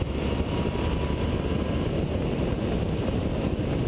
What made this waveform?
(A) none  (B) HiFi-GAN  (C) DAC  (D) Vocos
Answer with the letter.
A